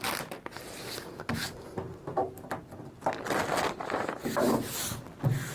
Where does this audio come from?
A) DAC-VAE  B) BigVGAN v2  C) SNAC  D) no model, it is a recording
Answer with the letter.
D